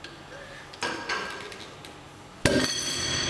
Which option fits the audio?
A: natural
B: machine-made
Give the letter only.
A